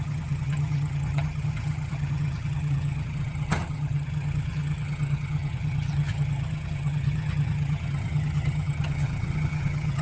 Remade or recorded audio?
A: remade